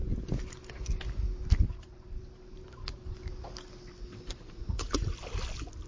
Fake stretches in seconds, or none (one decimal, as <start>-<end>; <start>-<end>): 4.4-5.1